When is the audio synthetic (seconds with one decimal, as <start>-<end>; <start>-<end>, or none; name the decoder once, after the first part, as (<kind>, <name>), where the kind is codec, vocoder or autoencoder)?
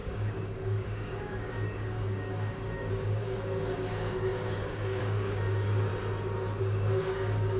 0.0-5.9 (codec, DAC); 6.6-7.6